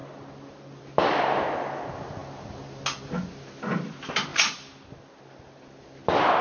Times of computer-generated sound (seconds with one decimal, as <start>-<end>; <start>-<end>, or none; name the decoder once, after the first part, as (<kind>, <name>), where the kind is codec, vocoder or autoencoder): none